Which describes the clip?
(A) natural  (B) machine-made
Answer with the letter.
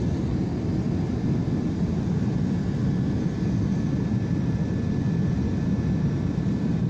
A